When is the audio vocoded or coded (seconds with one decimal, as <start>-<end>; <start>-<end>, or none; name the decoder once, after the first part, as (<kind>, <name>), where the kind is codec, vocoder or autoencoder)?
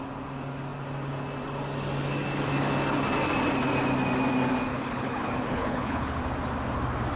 4.7-6.2 (codec, HILCodec)